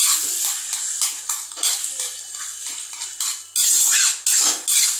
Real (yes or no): yes